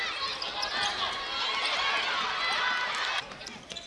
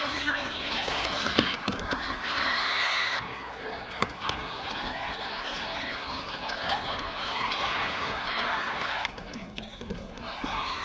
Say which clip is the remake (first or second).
second